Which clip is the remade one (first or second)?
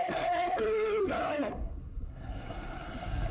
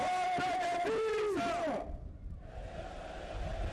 first